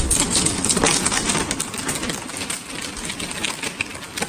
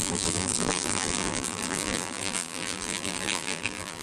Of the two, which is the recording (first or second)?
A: first